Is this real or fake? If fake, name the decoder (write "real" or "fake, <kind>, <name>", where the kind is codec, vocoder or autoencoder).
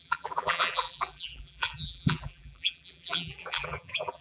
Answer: fake, vocoder, BigVGAN v2